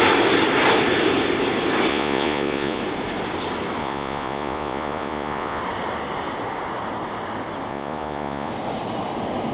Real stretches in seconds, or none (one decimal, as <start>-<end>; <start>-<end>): 0.0-1.9; 2.8-3.8; 5.6-7.7; 8.5-9.5